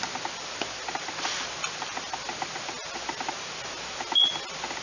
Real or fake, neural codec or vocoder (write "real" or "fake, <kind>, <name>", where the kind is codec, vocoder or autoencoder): real